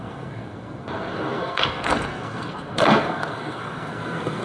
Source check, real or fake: fake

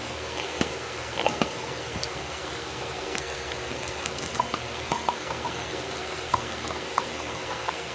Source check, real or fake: fake